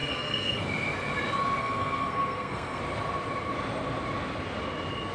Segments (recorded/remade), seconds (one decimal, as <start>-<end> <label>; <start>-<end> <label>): 0.0-0.6 remade; 0.6-1.6 recorded; 1.6-2.8 remade; 2.8-5.1 recorded